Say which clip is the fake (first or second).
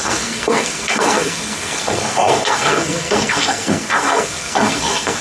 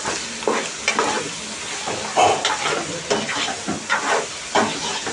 first